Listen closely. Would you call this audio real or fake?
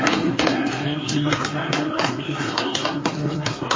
fake